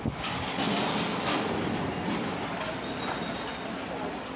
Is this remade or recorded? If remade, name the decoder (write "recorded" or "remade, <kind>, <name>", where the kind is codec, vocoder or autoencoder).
recorded